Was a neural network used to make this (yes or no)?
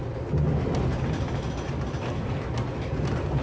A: no